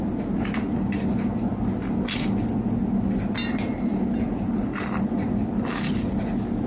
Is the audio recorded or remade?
recorded